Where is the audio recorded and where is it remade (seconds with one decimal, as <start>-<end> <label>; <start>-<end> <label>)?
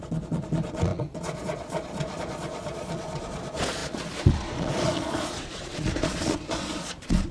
0.0-7.3 remade